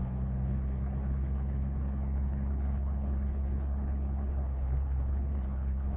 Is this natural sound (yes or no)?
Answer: no